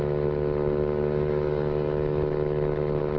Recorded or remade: recorded